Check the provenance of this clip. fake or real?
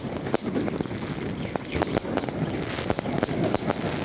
real